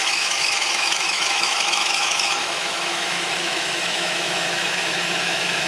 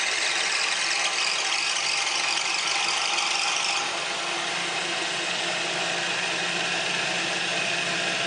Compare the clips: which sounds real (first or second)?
second